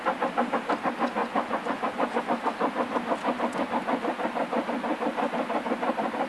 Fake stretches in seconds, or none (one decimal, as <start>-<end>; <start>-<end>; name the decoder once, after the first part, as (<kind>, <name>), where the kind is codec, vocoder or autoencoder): 1.2-2.2 (vocoder, Vocos)